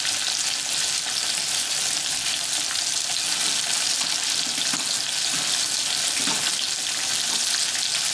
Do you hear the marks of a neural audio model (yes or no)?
no